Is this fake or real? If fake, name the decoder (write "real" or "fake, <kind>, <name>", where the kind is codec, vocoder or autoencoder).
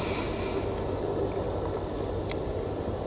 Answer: real